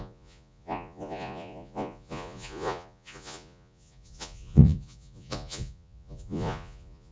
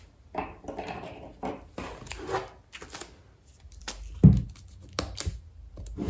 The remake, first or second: first